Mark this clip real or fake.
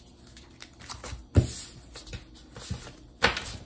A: real